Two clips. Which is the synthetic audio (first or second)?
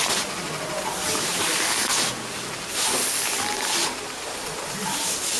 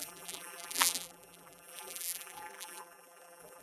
second